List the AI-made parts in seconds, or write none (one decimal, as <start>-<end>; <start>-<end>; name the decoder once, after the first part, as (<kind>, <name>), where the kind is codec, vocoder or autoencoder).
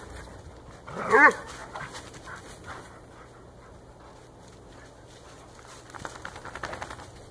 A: none